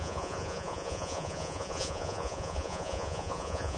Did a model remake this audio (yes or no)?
yes